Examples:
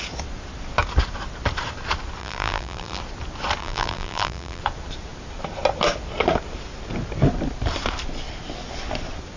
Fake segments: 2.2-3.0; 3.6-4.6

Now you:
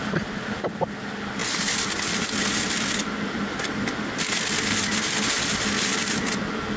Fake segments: none

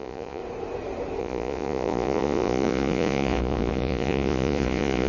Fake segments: 0.0-0.4; 1.2-5.1